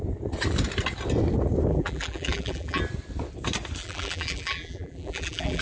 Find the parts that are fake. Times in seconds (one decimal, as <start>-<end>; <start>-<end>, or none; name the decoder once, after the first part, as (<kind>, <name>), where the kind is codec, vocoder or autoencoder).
1.7-2.8 (vocoder, BigVGAN v2); 3.8-5.6